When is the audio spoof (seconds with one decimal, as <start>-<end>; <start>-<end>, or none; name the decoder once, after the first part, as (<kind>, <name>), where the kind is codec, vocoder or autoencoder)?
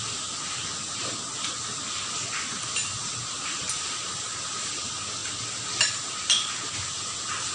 none